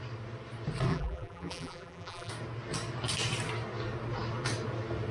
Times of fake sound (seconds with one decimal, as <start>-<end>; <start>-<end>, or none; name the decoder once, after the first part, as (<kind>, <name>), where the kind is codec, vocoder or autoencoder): 0.9-2.3 (vocoder, BigVGAN v2)